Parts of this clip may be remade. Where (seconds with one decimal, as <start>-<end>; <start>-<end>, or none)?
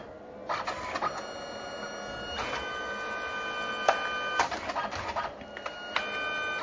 none